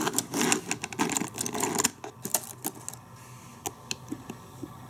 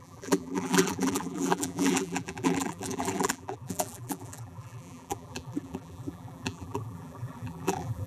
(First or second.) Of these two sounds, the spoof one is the second